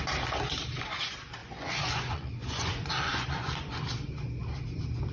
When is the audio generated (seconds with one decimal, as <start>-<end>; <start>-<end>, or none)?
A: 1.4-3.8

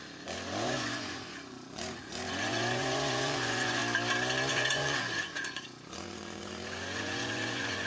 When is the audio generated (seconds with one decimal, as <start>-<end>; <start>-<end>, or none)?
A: 0.0-3.8; 4.5-7.9

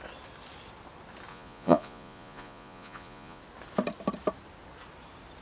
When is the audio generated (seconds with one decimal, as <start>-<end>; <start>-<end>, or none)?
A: 1.3-3.4

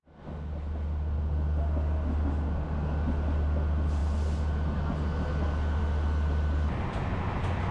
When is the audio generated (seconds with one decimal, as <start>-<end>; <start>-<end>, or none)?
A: none

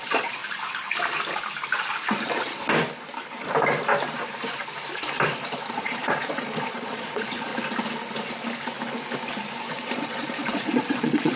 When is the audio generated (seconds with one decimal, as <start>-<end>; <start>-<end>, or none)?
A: 0.0-0.4; 5.7-7.5; 9.7-11.4

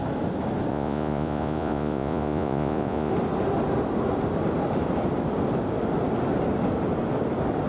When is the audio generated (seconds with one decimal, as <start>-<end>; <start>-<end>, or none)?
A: 0.7-3.1

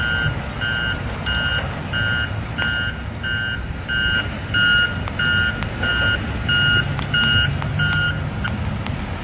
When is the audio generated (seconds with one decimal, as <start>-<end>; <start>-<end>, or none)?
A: none